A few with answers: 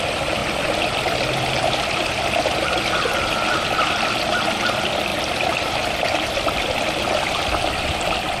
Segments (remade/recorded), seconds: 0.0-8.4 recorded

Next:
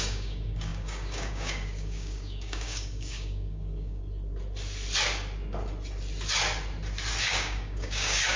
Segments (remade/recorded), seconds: 0.0-4.0 remade; 4.0-7.2 recorded; 7.2-8.4 remade